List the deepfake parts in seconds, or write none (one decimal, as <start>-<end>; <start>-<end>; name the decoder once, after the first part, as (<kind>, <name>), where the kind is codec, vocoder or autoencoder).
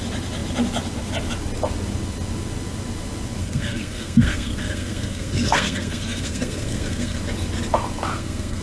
3.4-7.2 (codec, SNAC); 8.1-8.6